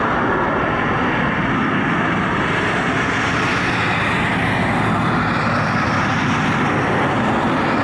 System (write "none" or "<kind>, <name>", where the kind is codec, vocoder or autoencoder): none